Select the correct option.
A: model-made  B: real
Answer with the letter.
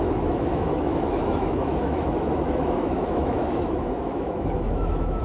A